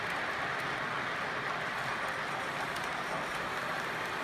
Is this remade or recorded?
recorded